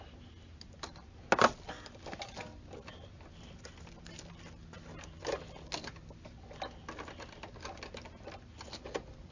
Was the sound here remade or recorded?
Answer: recorded